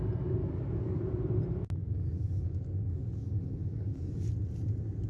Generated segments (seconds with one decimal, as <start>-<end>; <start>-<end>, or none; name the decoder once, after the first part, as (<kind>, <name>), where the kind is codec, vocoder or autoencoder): 0.4-1.0 (codec, DAC); 1.8-4.3